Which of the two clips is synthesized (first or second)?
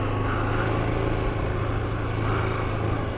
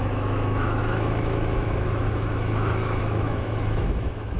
second